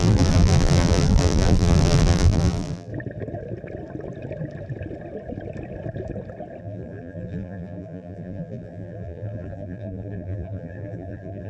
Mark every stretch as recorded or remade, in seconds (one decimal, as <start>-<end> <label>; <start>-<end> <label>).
0.0-2.9 remade; 2.9-6.6 recorded; 6.6-11.5 remade

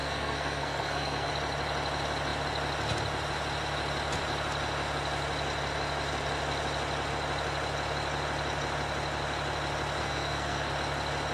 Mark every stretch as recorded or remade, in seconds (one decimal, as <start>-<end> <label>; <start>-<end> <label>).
0.0-1.3 remade; 1.3-10.0 recorded; 10.0-10.7 remade; 10.7-11.3 recorded

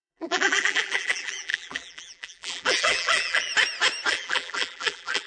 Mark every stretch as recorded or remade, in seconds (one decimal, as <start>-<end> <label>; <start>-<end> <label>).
0.0-3.5 remade; 3.5-4.1 recorded; 4.1-5.3 remade

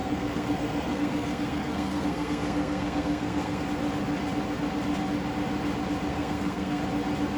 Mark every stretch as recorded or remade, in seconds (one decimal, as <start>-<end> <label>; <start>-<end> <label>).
0.0-3.6 remade; 3.6-6.1 recorded; 6.1-6.8 remade; 6.8-7.4 recorded

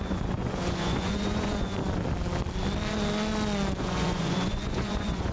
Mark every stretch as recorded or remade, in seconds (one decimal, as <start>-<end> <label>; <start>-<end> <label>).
0.0-1.8 remade; 1.8-3.8 recorded; 3.8-5.3 remade